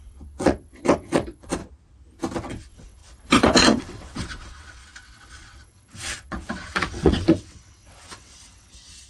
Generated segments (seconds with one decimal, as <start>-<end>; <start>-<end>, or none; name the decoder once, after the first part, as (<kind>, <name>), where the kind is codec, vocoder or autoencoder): 0.0-1.6 (vocoder, WaveNeXt); 2.5-9.1